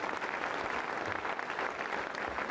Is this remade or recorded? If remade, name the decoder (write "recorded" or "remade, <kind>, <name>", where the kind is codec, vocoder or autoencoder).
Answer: recorded